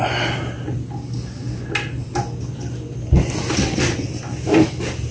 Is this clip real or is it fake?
real